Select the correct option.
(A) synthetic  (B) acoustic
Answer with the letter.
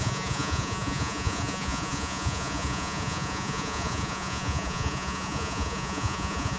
A